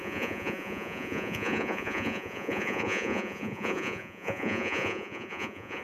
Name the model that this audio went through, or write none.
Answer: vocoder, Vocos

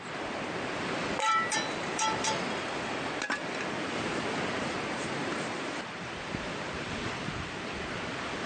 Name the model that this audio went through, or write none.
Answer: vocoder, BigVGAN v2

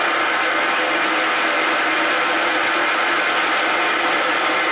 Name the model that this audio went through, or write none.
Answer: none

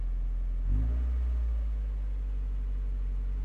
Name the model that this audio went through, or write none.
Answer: none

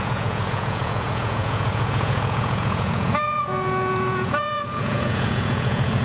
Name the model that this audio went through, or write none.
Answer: vocoder, Vocos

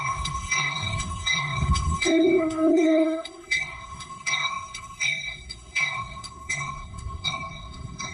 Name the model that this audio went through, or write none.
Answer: codec, SNAC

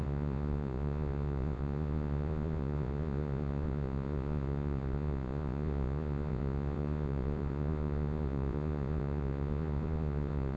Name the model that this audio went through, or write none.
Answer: vocoder, Vocos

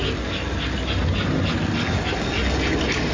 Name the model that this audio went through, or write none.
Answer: none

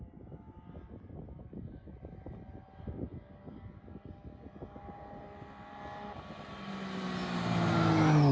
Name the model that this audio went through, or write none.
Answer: none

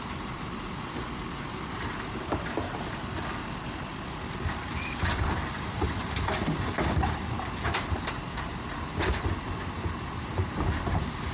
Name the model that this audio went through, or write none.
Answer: vocoder, BigVGAN v2